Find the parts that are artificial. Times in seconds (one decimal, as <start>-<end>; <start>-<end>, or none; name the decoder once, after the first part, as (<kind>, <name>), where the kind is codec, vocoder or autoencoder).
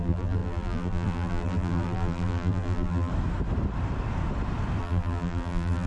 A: 0.0-3.1 (vocoder, BigVGAN v2); 4.8-5.9